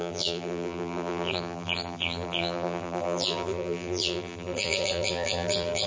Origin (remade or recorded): remade